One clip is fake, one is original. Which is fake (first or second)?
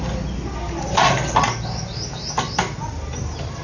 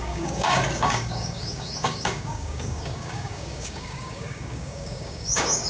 second